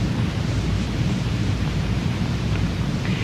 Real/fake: fake